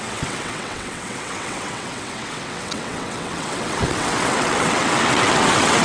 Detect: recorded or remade remade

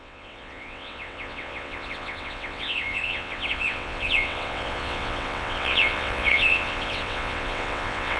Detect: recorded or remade remade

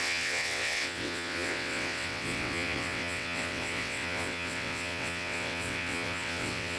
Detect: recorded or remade remade